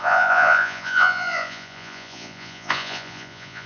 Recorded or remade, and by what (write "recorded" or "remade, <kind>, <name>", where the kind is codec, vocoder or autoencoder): remade, vocoder, Vocos